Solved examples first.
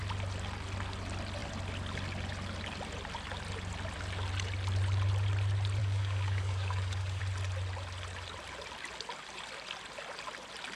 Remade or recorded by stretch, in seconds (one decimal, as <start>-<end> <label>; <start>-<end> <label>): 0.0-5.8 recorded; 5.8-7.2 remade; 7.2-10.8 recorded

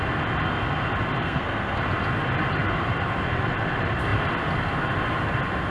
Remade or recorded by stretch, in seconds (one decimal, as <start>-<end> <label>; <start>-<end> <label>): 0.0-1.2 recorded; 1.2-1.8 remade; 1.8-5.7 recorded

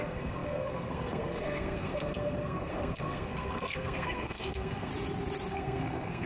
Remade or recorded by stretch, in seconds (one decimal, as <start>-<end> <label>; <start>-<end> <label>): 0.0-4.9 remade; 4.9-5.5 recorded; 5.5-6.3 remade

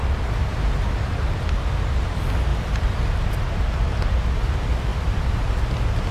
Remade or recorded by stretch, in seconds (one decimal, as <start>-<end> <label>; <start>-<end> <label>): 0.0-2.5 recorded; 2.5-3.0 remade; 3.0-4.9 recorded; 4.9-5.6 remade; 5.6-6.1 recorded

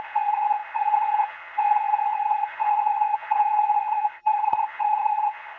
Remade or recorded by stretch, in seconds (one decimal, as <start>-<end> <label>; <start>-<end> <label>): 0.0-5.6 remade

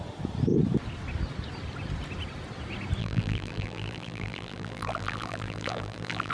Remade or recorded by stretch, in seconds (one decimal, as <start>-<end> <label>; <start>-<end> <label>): 0.0-3.0 recorded; 3.0-6.3 remade

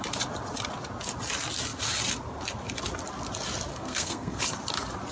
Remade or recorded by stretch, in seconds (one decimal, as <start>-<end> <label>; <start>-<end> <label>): 0.0-3.7 recorded; 3.7-4.4 remade; 4.4-5.1 recorded